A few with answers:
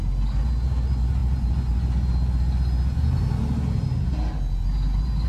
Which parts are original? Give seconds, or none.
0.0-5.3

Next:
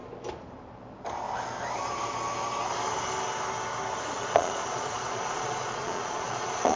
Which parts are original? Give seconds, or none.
0.0-4.1

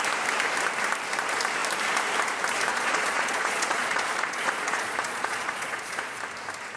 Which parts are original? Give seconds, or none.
0.0-2.7; 6.2-6.8

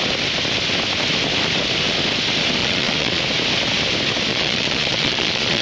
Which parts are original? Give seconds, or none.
0.0-2.6; 3.2-4.3

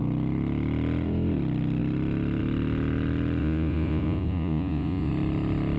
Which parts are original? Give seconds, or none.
0.0-3.4; 5.1-5.8